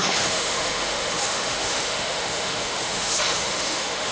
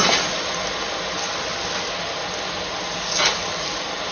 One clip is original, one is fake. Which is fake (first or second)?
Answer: first